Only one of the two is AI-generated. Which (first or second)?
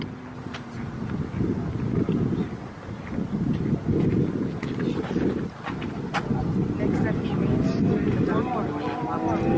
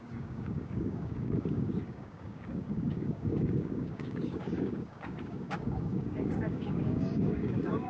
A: second